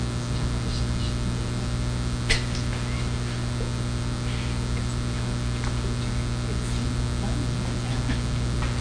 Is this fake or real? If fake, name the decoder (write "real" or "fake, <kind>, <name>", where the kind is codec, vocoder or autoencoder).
real